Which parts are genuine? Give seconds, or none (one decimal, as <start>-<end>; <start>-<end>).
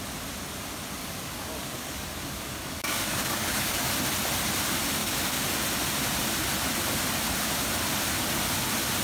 0.0-1.0; 3.9-5.0; 5.5-9.0